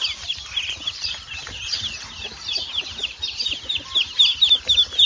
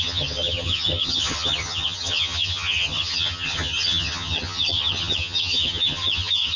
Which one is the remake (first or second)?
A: second